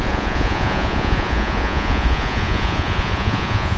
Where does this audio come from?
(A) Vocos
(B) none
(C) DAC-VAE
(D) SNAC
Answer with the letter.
A